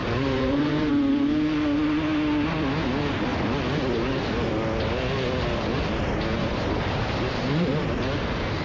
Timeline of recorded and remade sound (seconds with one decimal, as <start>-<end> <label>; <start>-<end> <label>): 0.0-0.9 remade; 0.9-6.4 recorded; 6.4-7.7 remade; 7.7-8.6 recorded

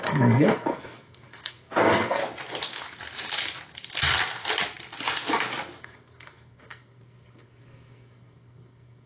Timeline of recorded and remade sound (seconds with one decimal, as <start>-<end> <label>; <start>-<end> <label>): 0.0-2.2 remade; 2.2-5.8 recorded; 5.8-9.1 remade